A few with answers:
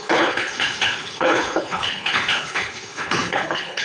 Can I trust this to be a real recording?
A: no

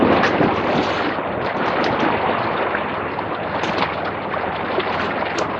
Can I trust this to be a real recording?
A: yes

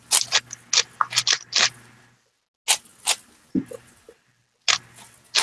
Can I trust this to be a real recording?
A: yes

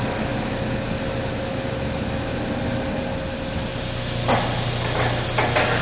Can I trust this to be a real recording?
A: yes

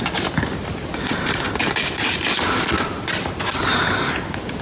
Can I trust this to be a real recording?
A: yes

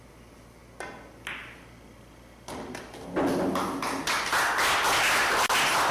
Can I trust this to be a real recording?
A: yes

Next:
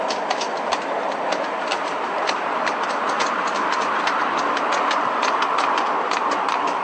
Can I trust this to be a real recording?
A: yes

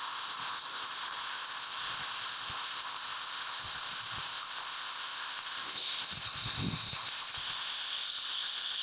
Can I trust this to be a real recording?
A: no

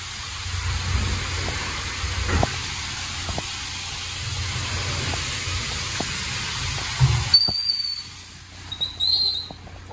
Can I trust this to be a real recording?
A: yes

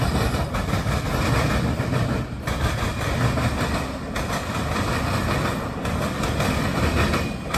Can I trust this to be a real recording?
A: yes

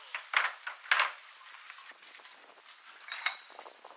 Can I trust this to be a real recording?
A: yes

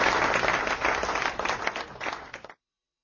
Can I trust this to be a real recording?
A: yes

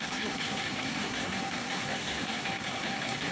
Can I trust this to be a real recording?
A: no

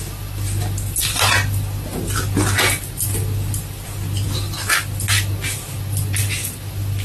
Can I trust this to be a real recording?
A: yes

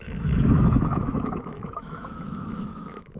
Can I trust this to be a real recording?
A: no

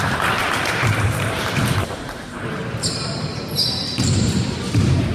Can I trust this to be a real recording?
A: no